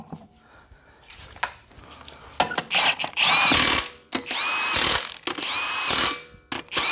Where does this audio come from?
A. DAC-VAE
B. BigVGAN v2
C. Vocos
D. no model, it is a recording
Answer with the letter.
D